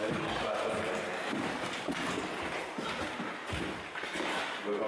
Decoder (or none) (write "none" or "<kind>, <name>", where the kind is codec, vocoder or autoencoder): none